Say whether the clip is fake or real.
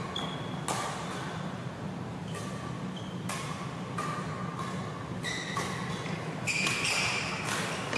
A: real